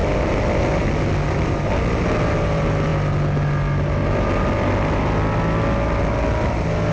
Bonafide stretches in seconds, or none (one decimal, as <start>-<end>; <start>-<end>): 0.0-6.9